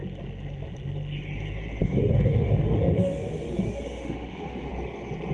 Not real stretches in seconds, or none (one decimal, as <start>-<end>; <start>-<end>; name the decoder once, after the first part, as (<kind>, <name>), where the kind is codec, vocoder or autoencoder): 1.8-4.7 (autoencoder, DAC-VAE)